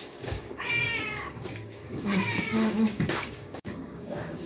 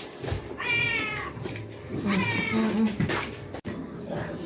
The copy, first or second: first